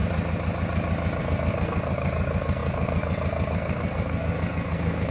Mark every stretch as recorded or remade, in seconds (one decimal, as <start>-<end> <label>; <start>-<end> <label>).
0.0-1.2 recorded; 1.2-5.1 remade